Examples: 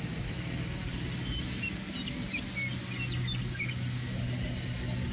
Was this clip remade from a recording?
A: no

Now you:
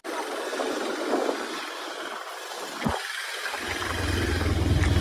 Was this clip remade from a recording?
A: no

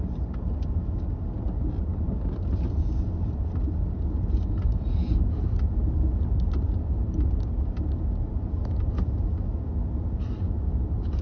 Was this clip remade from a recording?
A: no